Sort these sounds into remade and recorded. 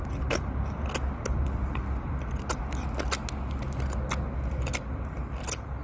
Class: recorded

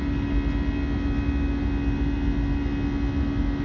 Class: recorded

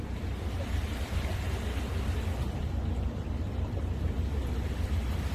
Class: remade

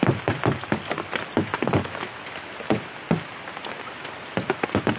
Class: recorded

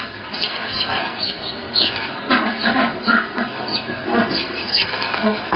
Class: remade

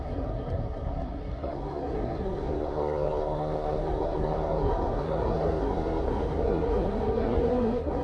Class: remade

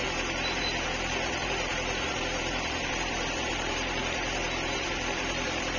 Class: remade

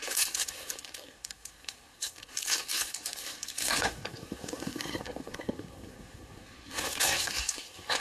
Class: remade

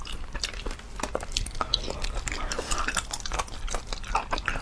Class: recorded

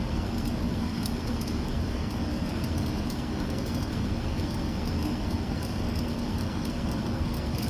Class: remade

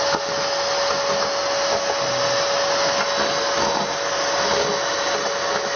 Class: recorded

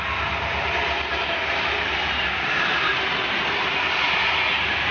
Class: recorded